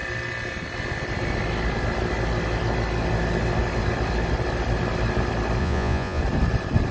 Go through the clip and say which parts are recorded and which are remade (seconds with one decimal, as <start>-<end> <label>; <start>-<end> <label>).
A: 0.0-5.6 recorded; 5.6-6.2 remade; 6.2-6.9 recorded